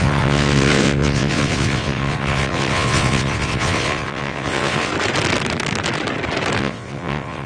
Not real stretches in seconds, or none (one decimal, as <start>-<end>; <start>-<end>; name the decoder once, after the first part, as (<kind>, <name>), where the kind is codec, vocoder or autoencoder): 0.0-4.9 (vocoder, WaveNeXt); 6.6-7.5